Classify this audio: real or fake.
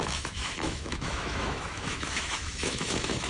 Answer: fake